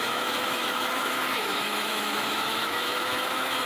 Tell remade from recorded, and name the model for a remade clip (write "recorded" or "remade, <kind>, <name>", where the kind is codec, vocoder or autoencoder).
remade, autoencoder, DAC-VAE